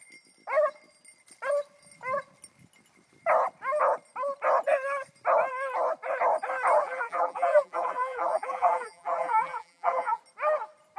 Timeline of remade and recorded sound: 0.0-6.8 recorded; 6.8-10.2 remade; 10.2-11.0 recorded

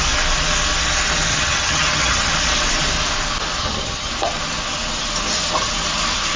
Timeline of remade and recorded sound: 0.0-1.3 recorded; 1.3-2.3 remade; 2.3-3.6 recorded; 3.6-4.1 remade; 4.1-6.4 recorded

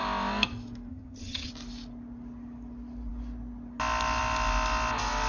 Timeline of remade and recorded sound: 0.0-0.9 recorded; 0.9-1.5 remade; 1.5-5.3 recorded